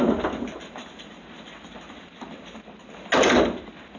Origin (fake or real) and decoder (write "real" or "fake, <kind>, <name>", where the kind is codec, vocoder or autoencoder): real